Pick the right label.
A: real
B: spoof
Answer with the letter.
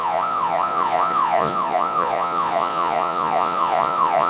B